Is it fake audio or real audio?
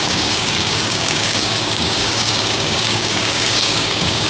fake